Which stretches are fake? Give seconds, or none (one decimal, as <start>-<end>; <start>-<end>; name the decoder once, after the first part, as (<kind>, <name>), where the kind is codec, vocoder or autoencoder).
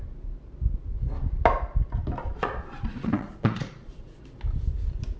2.2-4.2 (vocoder, Vocos)